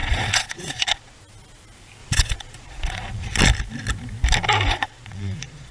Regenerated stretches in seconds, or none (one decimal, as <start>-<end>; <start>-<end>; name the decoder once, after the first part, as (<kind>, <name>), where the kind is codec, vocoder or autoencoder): 0.0-1.2 (vocoder, Vocos); 2.0-3.4; 4.7-5.7